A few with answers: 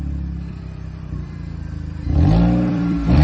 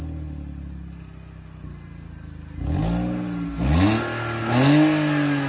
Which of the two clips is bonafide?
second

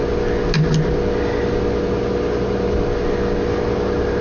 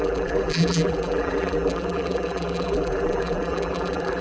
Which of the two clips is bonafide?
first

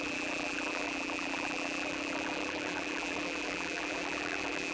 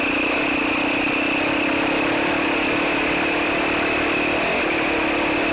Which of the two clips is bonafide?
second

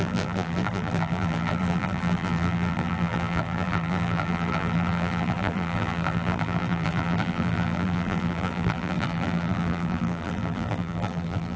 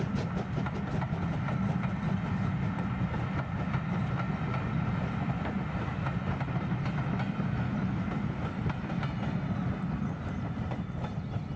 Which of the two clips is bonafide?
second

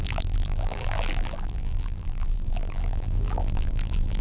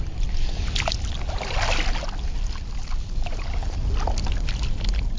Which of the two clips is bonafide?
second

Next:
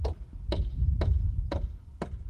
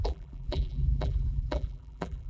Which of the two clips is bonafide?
first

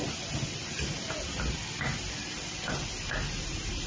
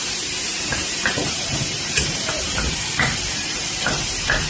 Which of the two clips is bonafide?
first